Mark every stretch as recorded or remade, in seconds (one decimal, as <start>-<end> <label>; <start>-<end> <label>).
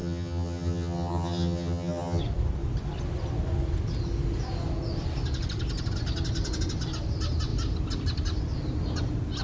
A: 0.0-2.2 remade; 2.2-9.4 recorded